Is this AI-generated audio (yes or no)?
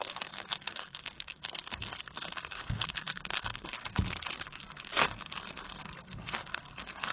yes